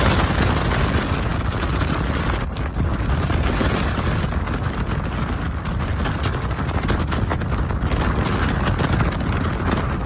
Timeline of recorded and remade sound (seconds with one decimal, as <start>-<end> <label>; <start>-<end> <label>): 0.0-10.1 recorded